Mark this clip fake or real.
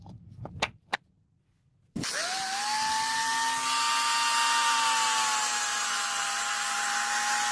real